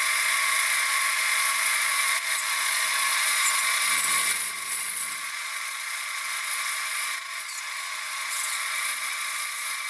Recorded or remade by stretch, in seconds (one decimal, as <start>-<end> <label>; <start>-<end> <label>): 0.0-9.9 remade

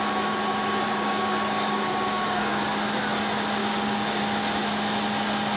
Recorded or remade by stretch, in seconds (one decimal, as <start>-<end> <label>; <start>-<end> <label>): 0.0-0.9 recorded; 0.9-2.6 remade; 2.6-3.6 recorded; 3.6-4.2 remade; 4.2-5.6 recorded

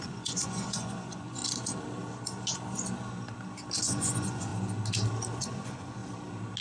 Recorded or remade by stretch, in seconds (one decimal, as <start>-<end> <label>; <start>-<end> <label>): 0.0-1.4 remade; 1.4-3.8 recorded; 3.8-4.5 remade; 4.5-5.4 recorded; 5.4-6.0 remade; 6.0-6.6 recorded